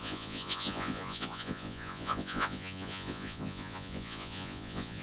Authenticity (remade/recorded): remade